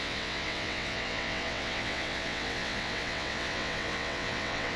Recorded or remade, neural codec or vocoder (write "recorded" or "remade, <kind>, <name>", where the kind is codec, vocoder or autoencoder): remade, vocoder, WaveNeXt